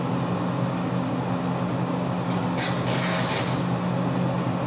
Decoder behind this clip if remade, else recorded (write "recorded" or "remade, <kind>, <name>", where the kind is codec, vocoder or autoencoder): recorded